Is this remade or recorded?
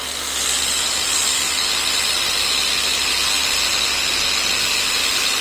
recorded